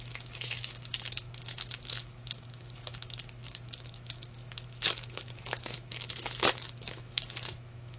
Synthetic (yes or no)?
yes